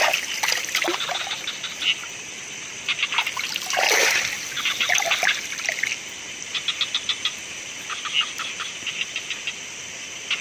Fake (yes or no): yes